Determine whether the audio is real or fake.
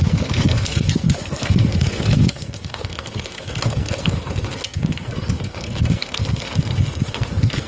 fake